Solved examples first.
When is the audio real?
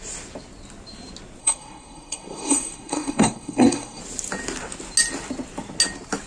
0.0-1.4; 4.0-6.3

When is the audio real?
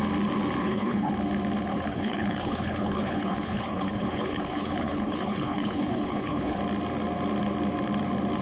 0.0-0.6; 1.1-1.7; 6.6-8.4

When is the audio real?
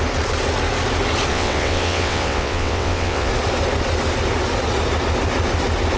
0.0-1.3; 3.3-6.0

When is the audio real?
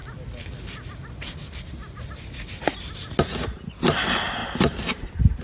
0.0-3.2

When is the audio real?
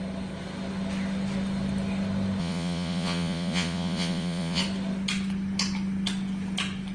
0.0-2.4; 4.6-6.9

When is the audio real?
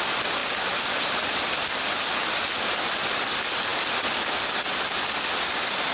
0.0-5.9